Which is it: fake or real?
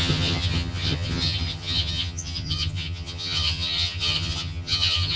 fake